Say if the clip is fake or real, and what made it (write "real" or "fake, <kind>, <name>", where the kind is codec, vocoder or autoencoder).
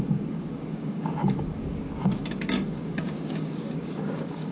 fake, codec, DAC